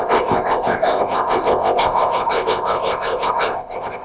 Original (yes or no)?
no